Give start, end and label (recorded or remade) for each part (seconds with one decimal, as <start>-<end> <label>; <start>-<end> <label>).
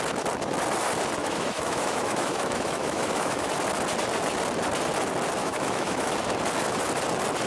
0.0-1.2 recorded; 1.2-3.5 remade; 3.5-5.4 recorded; 5.4-6.1 remade; 6.1-7.5 recorded